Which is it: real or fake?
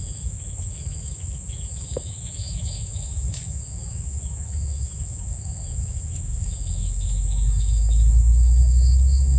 fake